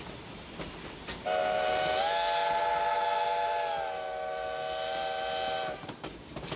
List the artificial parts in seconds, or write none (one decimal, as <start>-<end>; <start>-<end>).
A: none